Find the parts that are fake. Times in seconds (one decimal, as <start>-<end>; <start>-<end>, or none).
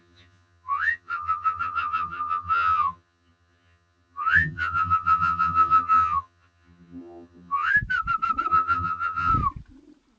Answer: 0.0-7.7; 8.5-9.3